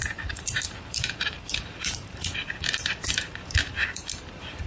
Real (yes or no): no